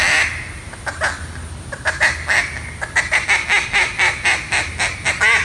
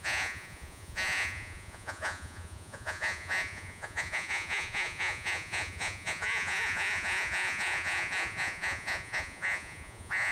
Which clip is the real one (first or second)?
first